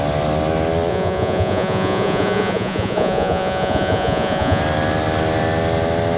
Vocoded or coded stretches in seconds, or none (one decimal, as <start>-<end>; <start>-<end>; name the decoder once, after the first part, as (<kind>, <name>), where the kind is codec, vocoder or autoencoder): 0.9-4.6 (vocoder, Vocos)